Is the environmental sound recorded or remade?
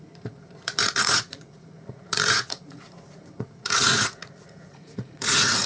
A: remade